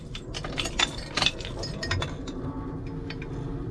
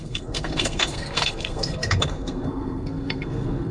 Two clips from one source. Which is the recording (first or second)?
first